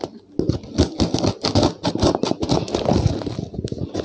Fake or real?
real